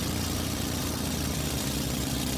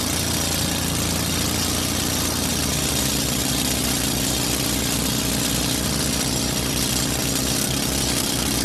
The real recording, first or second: second